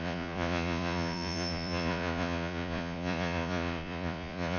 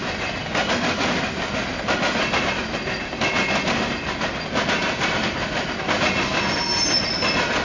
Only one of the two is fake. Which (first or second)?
first